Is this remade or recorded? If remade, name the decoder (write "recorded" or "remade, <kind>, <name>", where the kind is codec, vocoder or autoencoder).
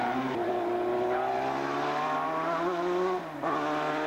recorded